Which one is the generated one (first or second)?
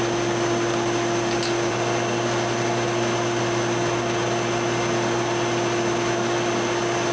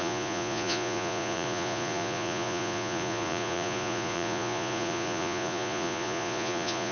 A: second